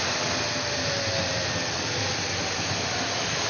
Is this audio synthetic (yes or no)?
no